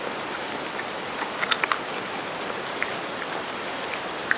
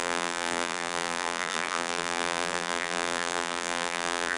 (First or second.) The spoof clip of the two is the second